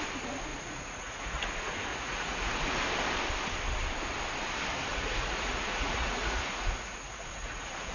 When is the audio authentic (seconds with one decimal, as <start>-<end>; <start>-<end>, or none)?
0.0-0.5; 1.4-1.9; 2.5-4.9

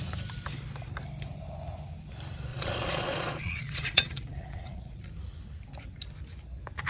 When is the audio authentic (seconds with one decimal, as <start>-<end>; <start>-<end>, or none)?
0.0-2.5; 5.0-6.9

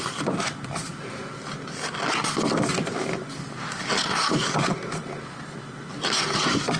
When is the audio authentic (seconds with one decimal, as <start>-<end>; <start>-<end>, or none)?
0.0-6.8

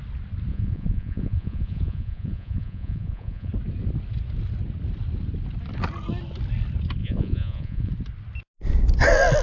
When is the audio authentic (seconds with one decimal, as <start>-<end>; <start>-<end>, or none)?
0.0-0.5; 3.5-7.0; 7.9-9.4

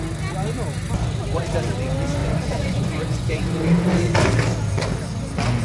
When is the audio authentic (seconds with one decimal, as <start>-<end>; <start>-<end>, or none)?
0.0-2.2; 3.6-5.6

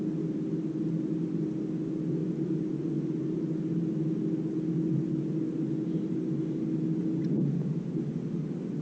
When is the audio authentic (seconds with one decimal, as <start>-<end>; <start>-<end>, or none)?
0.0-8.8

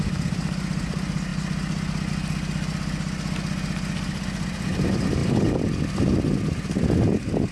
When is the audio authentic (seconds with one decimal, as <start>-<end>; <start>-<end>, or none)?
0.0-7.5